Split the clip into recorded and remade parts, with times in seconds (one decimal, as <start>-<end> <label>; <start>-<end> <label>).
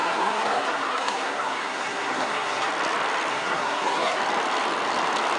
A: 0.0-2.7 remade; 2.7-3.3 recorded; 3.3-4.2 remade; 4.2-5.4 recorded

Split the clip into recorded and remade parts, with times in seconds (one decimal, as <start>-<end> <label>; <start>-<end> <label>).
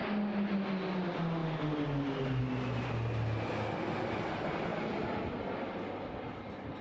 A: 0.0-6.8 recorded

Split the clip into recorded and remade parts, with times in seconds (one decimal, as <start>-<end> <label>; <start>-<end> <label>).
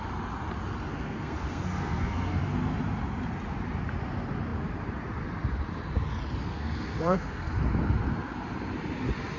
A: 0.0-0.9 recorded; 0.9-2.4 remade; 2.4-6.5 recorded; 6.5-7.5 remade; 7.5-9.4 recorded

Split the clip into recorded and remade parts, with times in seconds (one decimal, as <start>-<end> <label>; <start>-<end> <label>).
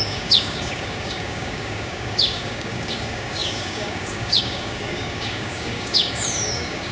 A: 0.0-6.9 remade